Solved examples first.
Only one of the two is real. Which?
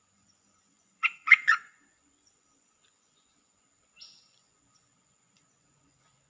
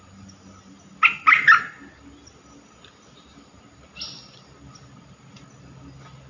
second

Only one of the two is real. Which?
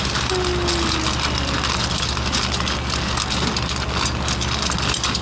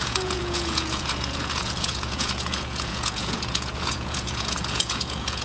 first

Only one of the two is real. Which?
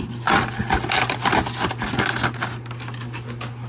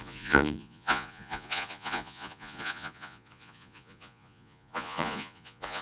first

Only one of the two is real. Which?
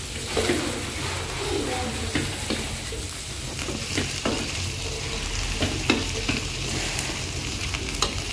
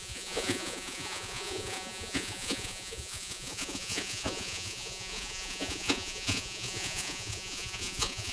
first